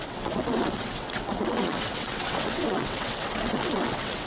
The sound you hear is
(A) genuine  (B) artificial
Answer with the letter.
B